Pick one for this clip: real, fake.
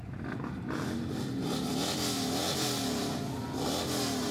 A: real